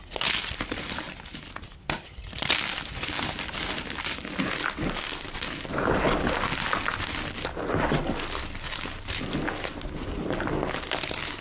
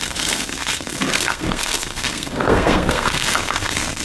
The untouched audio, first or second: first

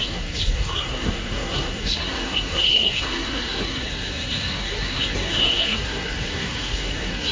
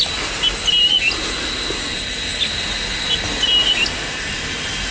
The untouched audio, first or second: second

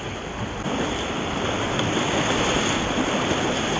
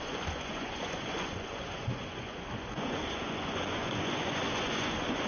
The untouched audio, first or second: first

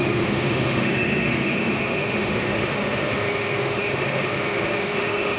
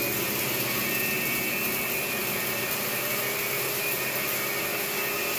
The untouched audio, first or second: second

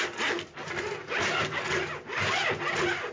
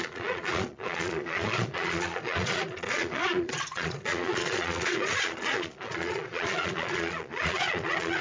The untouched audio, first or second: first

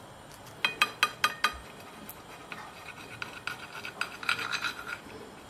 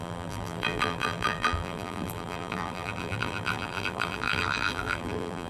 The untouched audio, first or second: first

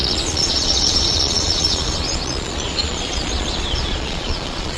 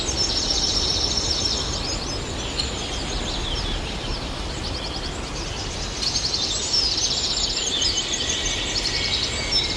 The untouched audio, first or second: second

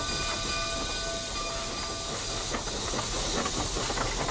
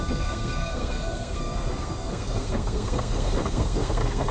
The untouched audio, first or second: first